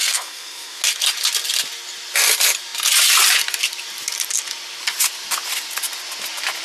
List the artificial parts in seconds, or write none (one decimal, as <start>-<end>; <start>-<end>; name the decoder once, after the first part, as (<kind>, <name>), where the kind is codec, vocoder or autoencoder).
0.0-0.8 (codec, SNAC)